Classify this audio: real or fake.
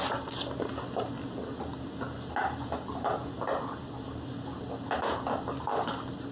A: real